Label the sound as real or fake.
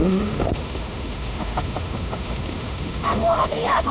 fake